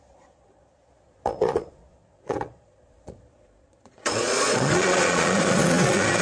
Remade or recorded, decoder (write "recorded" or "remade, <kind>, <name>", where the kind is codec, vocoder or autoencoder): remade, vocoder, Vocos